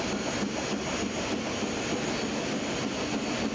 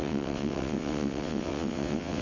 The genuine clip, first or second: first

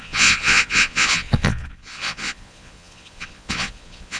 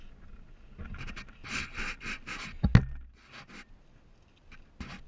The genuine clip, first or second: second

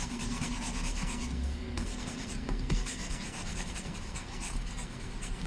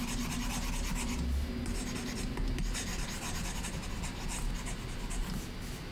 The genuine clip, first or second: second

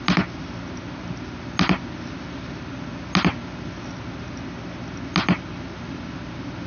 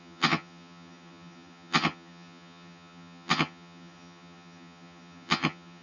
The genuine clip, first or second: first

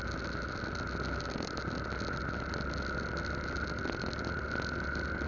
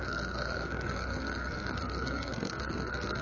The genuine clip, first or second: first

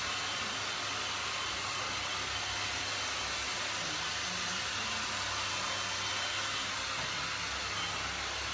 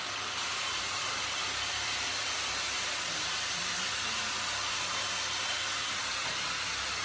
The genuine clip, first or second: first